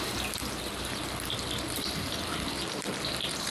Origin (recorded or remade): recorded